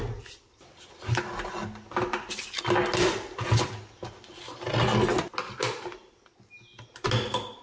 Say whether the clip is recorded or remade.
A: recorded